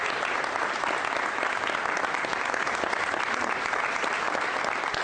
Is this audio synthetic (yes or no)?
no